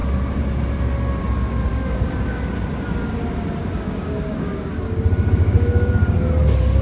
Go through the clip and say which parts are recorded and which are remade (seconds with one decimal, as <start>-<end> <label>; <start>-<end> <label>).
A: 0.0-1.7 recorded; 1.7-2.4 remade; 2.4-3.6 recorded; 3.6-4.7 remade; 4.7-5.4 recorded; 5.4-5.9 remade; 5.9-6.8 recorded